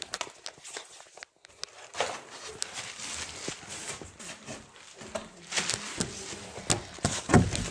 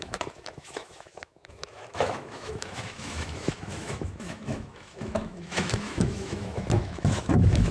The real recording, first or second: first